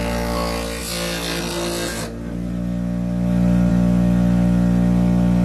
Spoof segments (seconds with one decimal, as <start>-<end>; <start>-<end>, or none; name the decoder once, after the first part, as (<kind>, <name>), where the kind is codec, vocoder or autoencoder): none